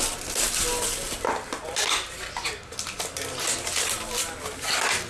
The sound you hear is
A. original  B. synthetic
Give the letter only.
A